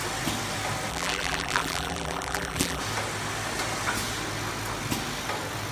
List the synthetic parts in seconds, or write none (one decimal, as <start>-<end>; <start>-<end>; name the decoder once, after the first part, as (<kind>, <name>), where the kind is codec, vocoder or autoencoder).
0.9-2.8 (vocoder, BigVGAN v2)

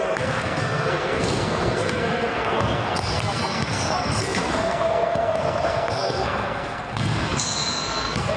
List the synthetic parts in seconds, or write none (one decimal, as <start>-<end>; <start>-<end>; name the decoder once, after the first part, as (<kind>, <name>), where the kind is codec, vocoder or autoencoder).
0.0-8.4 (codec, SNAC)

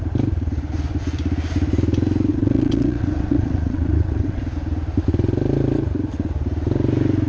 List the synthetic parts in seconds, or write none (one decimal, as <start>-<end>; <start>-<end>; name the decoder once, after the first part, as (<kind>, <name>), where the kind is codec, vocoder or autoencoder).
2.3-4.4 (vocoder, WaveNeXt)

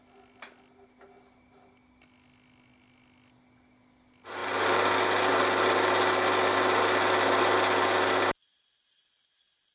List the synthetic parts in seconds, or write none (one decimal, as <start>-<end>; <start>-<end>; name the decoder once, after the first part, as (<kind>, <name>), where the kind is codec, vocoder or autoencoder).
none